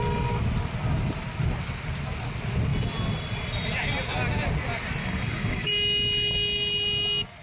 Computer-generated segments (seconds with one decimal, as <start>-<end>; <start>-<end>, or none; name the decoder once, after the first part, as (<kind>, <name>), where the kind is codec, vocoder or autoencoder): 5.0-5.7 (codec, DAC)